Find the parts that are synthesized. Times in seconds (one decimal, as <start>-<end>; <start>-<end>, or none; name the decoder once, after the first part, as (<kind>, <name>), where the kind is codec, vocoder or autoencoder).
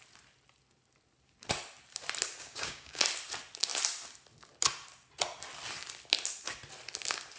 2.4-3.0 (codec, DAC)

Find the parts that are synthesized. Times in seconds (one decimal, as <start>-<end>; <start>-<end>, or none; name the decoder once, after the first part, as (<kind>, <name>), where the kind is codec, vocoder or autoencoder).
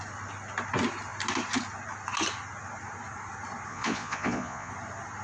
3.7-4.7 (vocoder, Vocos)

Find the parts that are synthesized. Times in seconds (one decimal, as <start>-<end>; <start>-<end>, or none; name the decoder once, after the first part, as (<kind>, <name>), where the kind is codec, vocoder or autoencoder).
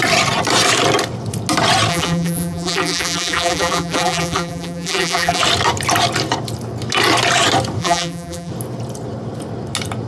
1.9-5.4 (vocoder, BigVGAN v2); 7.8-8.5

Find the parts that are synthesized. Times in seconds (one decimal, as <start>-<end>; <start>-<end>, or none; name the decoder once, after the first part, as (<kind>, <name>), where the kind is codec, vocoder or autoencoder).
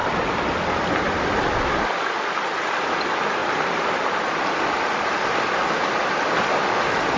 none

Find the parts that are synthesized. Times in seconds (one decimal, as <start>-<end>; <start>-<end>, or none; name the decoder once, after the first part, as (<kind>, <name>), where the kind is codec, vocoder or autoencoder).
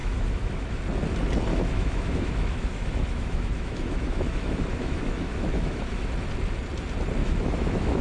0.0-0.8 (autoencoder, DAC-VAE); 1.5-6.1; 7.2-8.0